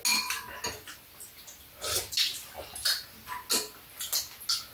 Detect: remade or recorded recorded